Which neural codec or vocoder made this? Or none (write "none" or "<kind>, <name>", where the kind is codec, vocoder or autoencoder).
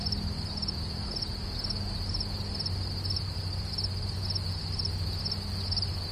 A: none